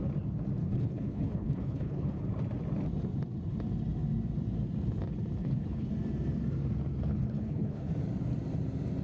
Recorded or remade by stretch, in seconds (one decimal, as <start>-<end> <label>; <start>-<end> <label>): 0.0-0.6 recorded; 0.6-2.2 remade; 2.2-5.4 recorded; 5.4-5.9 remade; 5.9-7.1 recorded; 7.1-7.9 remade; 7.9-9.0 recorded